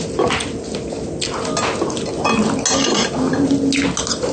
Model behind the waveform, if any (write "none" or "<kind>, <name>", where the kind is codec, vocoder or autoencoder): none